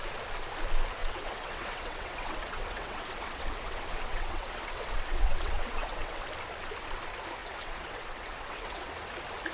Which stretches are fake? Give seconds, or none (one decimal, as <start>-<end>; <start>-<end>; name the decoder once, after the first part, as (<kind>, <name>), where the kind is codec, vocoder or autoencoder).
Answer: 1.0-6.2 (vocoder, WaveNeXt); 7.4-8.9